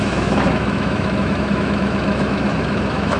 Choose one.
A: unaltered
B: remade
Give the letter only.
B